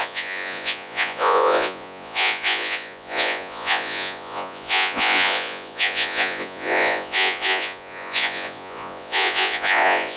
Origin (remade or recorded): remade